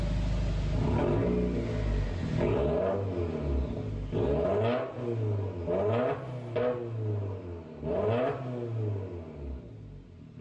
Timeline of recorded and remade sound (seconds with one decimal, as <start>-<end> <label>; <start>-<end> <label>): 0.0-10.4 recorded